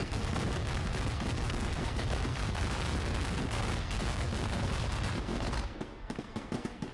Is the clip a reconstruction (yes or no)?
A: yes